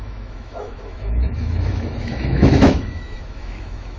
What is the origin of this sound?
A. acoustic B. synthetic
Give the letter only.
B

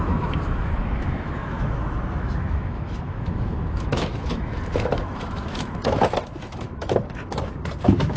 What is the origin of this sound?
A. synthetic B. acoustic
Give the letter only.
A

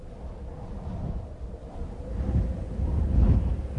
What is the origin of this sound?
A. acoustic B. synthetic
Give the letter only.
A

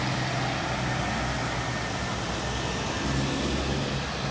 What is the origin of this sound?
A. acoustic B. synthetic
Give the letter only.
A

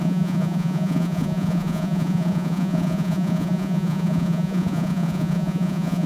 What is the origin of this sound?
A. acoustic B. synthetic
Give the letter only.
B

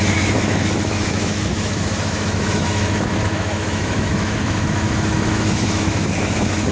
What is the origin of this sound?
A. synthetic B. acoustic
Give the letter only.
A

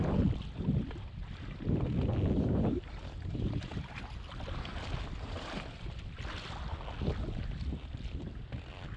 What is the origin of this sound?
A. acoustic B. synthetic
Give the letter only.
A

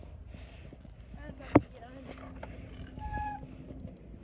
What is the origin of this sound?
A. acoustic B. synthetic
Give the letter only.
A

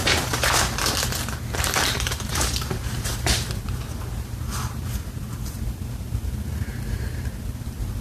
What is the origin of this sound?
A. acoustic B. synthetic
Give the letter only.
B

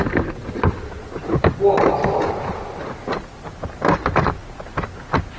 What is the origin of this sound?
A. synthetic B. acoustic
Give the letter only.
B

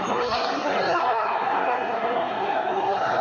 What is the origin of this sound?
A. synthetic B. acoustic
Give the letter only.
A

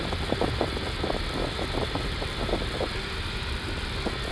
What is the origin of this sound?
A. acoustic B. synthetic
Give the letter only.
A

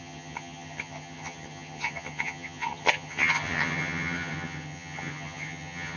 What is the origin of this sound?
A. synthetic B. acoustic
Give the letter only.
A